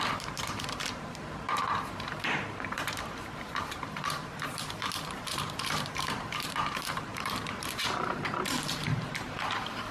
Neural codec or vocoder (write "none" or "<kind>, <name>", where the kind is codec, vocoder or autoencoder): vocoder, BigVGAN v2